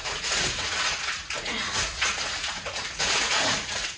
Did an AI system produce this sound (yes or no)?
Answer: yes